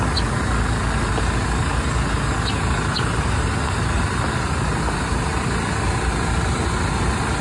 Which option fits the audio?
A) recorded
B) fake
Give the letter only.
A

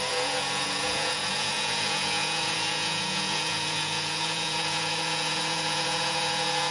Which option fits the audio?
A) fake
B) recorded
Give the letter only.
A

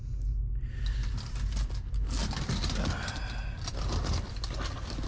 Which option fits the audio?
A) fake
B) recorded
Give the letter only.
B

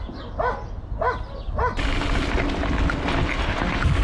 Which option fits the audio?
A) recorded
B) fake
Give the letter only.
A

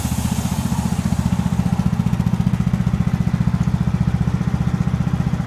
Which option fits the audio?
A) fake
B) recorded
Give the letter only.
B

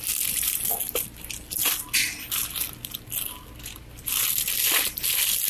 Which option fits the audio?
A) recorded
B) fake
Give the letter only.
A